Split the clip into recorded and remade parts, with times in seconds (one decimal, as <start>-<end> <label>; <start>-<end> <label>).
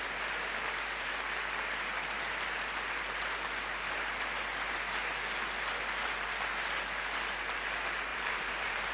0.0-8.1 recorded; 8.1-8.9 remade